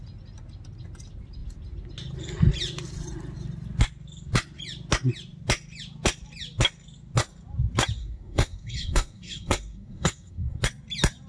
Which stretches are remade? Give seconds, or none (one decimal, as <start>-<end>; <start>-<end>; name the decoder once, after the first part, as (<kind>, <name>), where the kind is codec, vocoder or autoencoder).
8.0-10.6 (codec, SNAC)